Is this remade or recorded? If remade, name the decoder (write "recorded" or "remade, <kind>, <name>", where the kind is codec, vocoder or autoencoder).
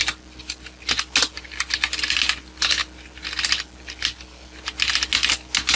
recorded